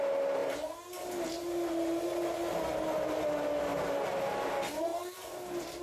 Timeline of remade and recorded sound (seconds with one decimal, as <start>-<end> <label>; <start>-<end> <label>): 0.0-4.9 recorded; 4.9-5.8 remade